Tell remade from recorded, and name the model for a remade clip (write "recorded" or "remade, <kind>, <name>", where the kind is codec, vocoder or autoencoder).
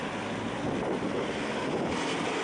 recorded